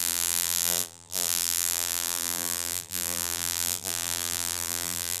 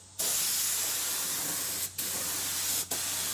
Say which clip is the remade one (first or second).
first